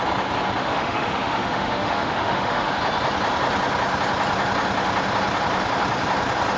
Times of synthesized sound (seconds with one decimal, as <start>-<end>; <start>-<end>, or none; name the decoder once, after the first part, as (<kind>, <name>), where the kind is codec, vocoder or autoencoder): 0.6-2.7 (autoencoder, DAC-VAE)